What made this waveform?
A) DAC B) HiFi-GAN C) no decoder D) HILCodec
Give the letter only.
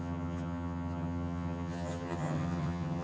B